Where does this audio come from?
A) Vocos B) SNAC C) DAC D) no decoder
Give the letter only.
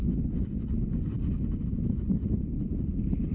D